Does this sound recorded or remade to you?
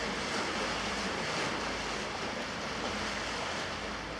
recorded